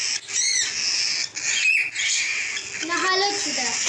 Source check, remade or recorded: recorded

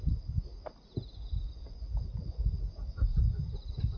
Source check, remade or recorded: recorded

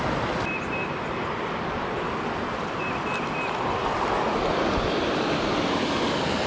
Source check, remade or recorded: recorded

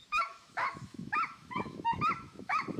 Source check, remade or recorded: remade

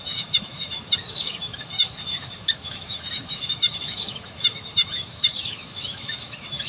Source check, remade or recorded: remade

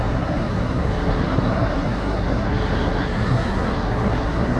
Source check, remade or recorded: remade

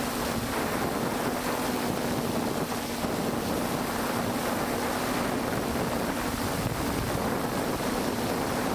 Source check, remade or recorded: recorded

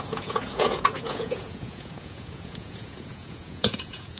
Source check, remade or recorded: remade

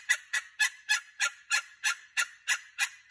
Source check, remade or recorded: recorded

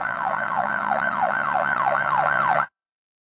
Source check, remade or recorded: remade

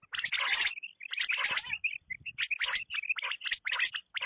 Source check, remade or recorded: recorded